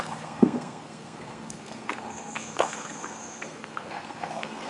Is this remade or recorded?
remade